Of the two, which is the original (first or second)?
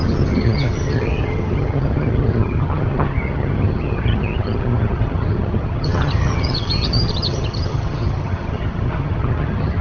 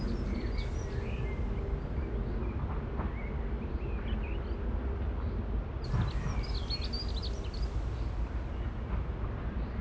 second